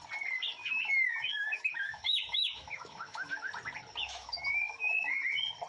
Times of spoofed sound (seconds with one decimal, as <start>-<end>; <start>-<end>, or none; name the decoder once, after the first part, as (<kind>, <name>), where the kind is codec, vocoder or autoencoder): 0.6-3.3 (autoencoder, DAC-VAE); 4.0-5.3

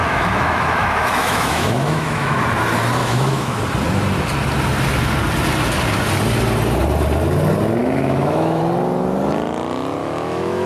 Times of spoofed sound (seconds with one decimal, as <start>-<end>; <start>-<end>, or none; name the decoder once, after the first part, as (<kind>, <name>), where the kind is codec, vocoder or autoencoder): 0.0-2.4 (autoencoder, DAC-VAE); 3.0-3.6; 7.8-8.6; 10.0-10.7

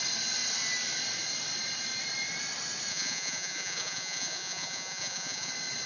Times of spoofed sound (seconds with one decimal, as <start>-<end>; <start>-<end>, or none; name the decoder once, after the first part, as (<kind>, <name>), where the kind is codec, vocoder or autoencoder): 2.9-5.5 (vocoder, Vocos)

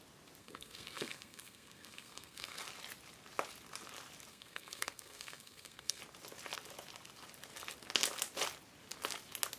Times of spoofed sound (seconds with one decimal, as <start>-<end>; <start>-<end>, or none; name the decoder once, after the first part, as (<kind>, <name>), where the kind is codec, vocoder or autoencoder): 0.4-2.6 (codec, SNAC); 4.3-6.0

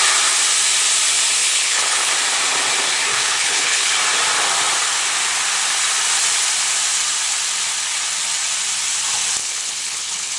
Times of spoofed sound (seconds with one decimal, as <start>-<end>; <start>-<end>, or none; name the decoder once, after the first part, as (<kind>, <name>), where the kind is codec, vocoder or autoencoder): 1.4-2.1 (codec, HILCodec); 3.1-3.9; 9.4-10.4